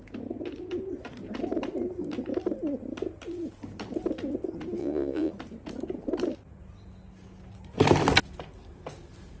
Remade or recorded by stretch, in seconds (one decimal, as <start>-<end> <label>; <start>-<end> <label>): 0.0-4.8 recorded; 4.8-5.3 remade; 5.3-9.4 recorded